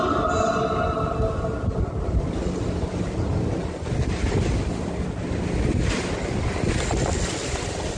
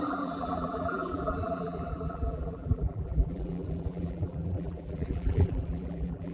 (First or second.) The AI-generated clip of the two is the second